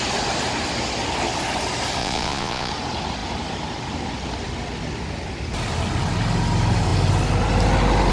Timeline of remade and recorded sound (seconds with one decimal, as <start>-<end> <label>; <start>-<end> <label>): 0.0-2.0 recorded; 2.0-2.7 remade; 2.7-8.1 recorded